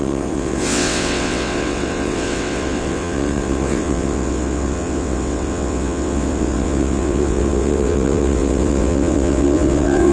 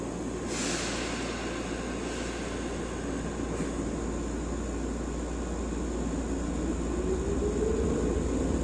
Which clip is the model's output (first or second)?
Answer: first